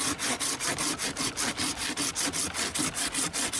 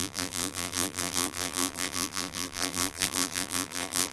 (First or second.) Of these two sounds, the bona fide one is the first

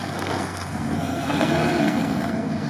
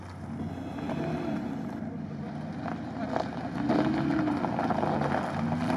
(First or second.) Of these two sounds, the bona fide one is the second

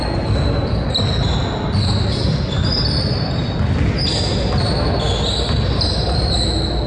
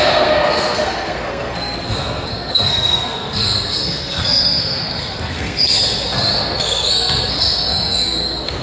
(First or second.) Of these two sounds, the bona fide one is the first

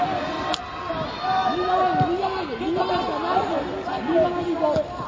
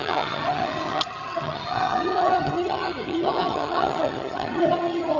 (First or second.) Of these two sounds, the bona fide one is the first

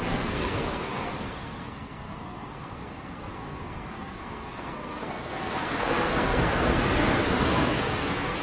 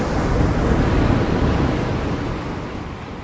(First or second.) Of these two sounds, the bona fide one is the second